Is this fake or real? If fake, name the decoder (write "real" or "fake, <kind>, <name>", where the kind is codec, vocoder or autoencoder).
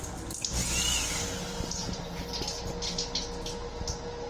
real